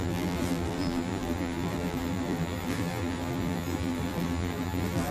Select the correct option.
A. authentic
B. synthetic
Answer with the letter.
B